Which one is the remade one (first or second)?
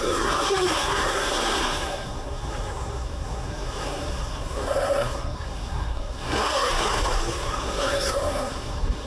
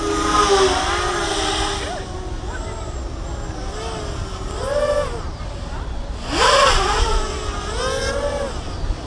first